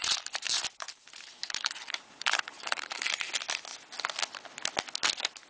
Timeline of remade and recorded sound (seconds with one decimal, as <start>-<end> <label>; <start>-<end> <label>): 0.0-3.3 remade; 3.3-5.5 recorded